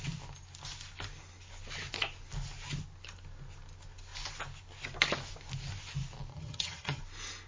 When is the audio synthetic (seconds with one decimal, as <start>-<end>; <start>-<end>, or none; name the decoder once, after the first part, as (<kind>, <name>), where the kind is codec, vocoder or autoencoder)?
6.3-7.0 (vocoder, HiFi-GAN)

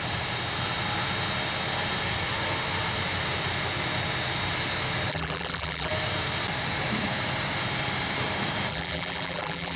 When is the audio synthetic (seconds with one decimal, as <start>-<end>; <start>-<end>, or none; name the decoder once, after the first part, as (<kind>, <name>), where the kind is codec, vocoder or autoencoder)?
5.1-5.9 (vocoder, BigVGAN v2); 8.7-9.8

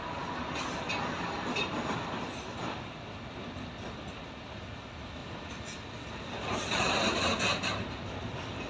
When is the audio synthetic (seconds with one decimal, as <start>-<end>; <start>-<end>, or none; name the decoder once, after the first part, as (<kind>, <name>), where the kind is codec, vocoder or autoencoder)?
5.2-8.7 (vocoder, BigVGAN v2)

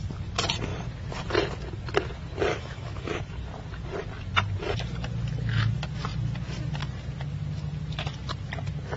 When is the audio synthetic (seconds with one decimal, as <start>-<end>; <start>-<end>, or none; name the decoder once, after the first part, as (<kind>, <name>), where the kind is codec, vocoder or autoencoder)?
2.5-3.2 (autoencoder, DAC-VAE)

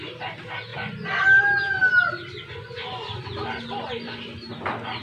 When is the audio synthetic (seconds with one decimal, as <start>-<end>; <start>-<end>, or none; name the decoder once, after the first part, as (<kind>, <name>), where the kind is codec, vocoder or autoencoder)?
none

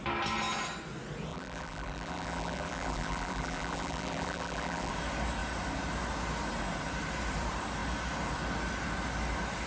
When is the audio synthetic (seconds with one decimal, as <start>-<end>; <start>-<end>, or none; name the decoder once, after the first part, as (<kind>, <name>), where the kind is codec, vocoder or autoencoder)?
1.3-4.9 (vocoder, BigVGAN v2)

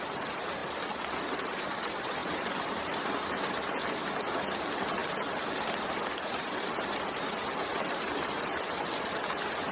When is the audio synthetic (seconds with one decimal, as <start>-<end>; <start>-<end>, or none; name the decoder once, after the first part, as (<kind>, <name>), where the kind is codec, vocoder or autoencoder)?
2.2-3.1 (vocoder, BigVGAN v2)